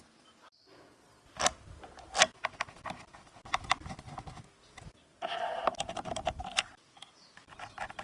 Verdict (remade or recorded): recorded